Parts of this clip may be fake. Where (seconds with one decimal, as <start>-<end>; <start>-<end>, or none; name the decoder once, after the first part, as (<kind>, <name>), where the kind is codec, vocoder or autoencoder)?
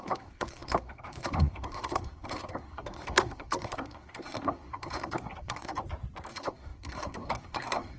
0.0-5.8 (codec, SNAC); 6.3-8.0